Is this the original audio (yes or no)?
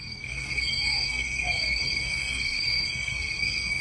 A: no